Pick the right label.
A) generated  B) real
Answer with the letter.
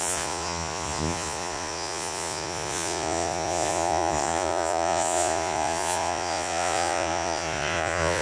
A